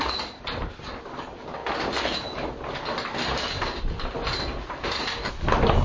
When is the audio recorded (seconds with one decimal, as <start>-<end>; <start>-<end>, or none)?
none